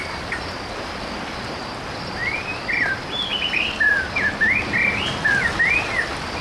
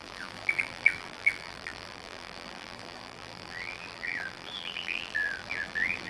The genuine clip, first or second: first